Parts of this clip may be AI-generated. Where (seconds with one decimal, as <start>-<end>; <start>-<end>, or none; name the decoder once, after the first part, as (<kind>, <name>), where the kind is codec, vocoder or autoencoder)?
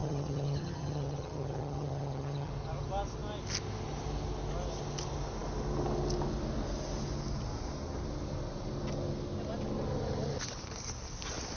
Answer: 0.0-2.5 (vocoder, HiFi-GAN)